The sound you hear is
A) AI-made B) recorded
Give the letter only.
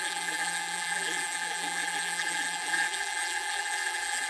A